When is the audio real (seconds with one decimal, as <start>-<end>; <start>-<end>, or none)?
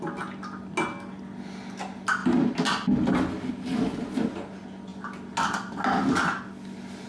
0.0-7.1